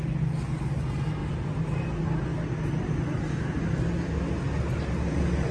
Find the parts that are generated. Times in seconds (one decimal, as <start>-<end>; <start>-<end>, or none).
1.2-1.8; 2.3-3.6